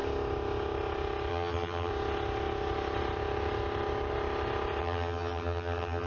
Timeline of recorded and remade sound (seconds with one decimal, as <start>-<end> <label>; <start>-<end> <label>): 0.0-1.3 recorded; 1.3-1.9 remade; 1.9-4.8 recorded; 4.8-6.1 remade